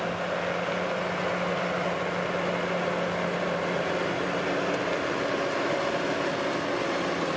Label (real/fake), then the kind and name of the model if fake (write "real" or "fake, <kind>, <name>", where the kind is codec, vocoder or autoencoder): real